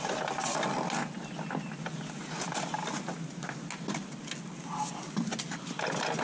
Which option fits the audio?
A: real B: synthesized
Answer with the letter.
A